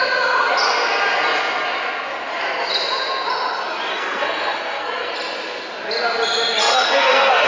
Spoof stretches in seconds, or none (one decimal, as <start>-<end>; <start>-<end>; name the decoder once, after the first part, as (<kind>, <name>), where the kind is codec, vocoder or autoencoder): 3.9-5.1 (codec, SNAC); 6.6-7.5